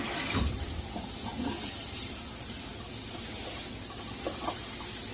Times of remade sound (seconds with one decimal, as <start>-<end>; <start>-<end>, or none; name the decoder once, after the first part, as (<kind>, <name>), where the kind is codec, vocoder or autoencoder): none

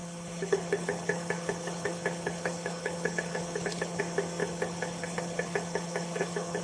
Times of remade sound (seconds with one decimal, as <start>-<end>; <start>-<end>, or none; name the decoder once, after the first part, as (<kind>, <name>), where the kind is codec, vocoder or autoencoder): 0.0-4.0 (codec, HILCodec); 4.4-6.6